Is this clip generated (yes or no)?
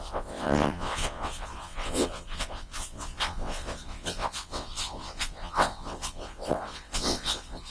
yes